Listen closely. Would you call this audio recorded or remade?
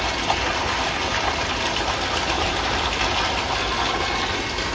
recorded